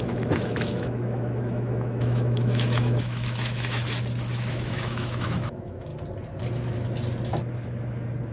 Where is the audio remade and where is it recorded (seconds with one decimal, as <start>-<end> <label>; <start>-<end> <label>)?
0.0-3.8 remade; 3.8-4.4 recorded; 4.4-5.9 remade; 5.9-8.3 recorded